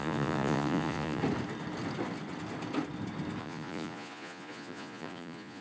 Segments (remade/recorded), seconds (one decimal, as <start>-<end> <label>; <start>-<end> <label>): 0.0-1.2 remade; 1.2-3.4 recorded; 3.4-5.6 remade